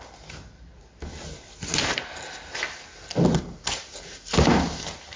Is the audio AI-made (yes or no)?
no